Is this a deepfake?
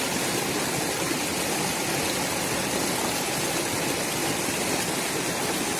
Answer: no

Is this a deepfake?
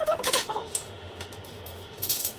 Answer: yes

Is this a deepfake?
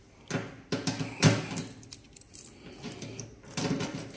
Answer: no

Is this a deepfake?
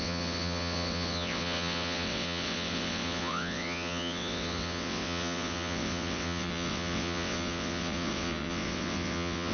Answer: yes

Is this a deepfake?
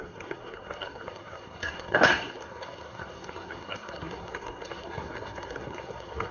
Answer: yes